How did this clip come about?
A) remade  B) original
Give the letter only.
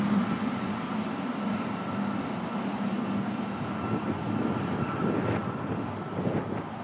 B